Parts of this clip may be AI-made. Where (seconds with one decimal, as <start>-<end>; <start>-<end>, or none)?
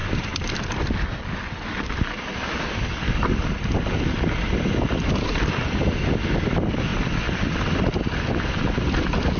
none